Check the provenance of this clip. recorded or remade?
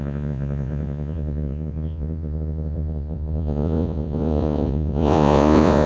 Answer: remade